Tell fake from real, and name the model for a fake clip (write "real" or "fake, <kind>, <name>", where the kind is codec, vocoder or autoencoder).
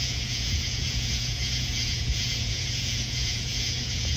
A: fake, vocoder, Vocos